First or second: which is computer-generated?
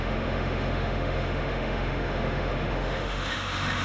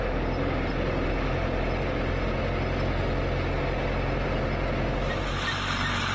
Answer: first